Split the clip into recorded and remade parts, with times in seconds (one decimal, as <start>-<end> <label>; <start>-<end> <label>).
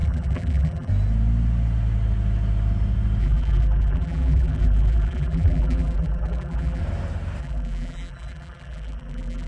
0.0-0.9 remade; 0.9-3.2 recorded; 3.2-6.8 remade; 6.8-7.4 recorded; 7.4-9.5 remade